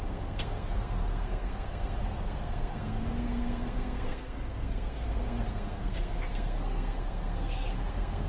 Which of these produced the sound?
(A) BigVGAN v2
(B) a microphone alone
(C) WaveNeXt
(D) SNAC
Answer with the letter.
D